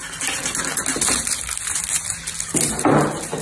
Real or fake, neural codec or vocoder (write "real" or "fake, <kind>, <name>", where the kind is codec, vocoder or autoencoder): real